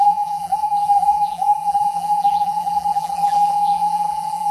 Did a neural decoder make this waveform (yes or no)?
yes